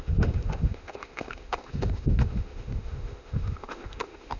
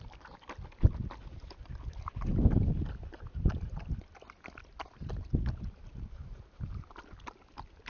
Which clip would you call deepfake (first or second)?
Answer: first